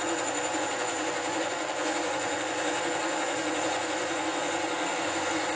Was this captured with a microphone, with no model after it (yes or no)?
no